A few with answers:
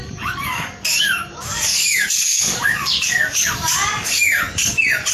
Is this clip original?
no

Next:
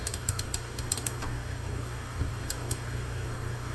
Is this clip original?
no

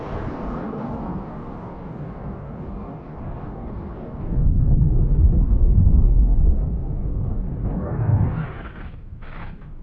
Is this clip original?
no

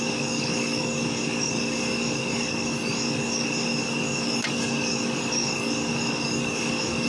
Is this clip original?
no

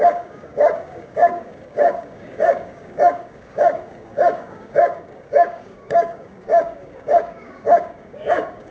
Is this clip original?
no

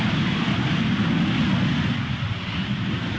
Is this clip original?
yes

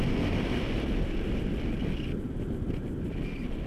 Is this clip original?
yes